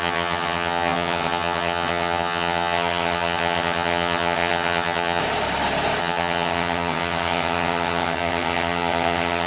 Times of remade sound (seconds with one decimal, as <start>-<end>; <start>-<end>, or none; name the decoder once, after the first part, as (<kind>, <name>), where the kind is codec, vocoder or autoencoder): 0.0-5.2 (vocoder, HiFi-GAN); 6.0-9.5